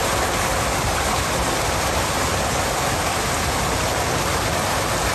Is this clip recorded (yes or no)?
yes